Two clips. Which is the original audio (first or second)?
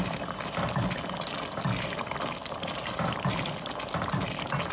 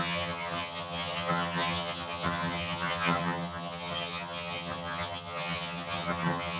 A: first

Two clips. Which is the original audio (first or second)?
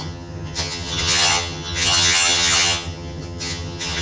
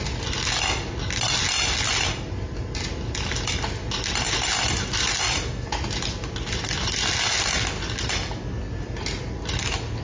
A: second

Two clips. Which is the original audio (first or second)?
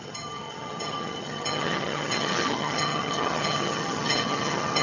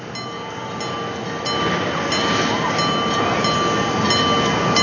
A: second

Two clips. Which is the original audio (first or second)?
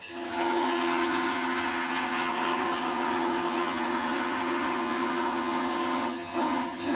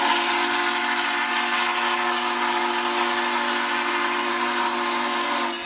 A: second